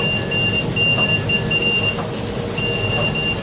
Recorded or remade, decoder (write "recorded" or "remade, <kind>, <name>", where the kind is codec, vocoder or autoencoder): recorded